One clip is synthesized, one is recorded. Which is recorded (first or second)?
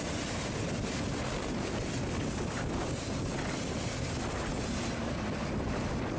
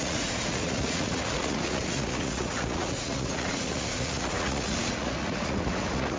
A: first